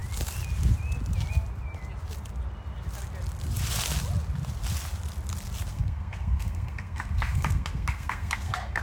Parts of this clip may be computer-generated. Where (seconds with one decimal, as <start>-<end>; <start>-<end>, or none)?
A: 5.7-8.8